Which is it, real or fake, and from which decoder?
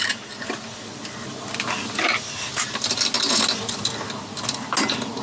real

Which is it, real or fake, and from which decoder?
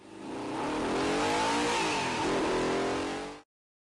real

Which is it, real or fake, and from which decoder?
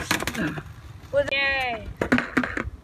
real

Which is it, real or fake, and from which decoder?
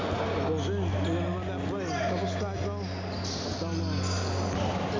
real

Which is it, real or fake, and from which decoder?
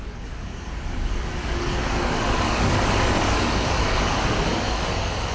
fake, codec, DAC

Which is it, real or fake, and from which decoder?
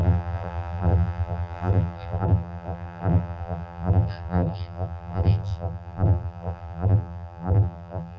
fake, vocoder, BigVGAN v2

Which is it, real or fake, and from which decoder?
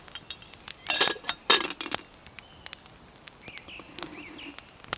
real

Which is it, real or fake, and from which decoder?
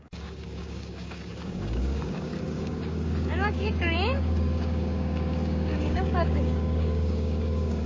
fake, codec, DAC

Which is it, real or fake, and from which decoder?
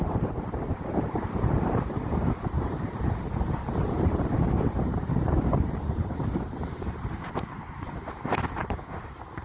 fake, vocoder, BigVGAN v2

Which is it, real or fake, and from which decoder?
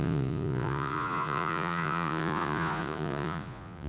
fake, vocoder, Vocos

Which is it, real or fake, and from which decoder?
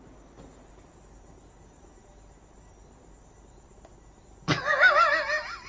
real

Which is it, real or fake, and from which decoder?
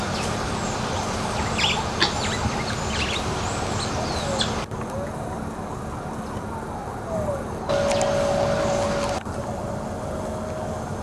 real